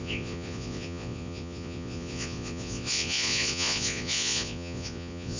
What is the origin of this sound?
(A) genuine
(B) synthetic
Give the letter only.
B